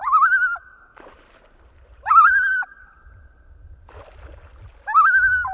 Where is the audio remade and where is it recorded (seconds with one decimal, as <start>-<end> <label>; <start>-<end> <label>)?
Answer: 0.0-0.7 recorded; 0.7-4.0 remade; 4.0-5.5 recorded